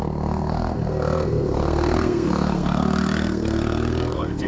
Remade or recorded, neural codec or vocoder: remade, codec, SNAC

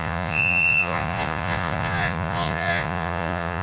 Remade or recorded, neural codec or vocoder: remade, vocoder, Vocos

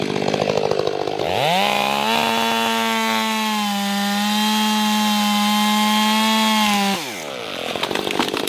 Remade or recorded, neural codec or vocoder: recorded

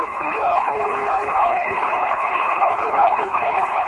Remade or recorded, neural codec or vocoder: remade, codec, HILCodec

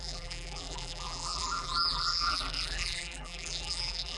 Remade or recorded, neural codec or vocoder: remade, vocoder, BigVGAN v2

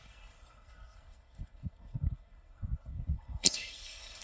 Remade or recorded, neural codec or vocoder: remade, codec, SNAC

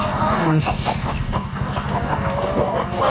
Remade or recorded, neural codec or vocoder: remade, codec, DAC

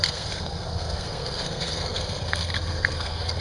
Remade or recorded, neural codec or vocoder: remade, codec, SNAC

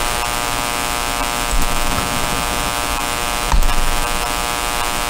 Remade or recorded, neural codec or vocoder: recorded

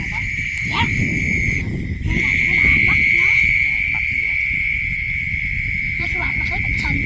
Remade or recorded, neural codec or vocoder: remade, vocoder, BigVGAN v2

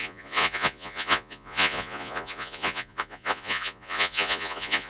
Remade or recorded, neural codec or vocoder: remade, vocoder, Vocos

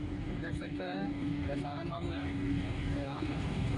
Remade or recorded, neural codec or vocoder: remade, codec, DAC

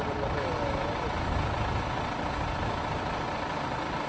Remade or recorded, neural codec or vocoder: recorded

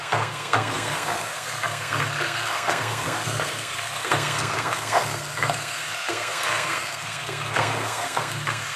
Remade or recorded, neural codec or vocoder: remade, codec, SNAC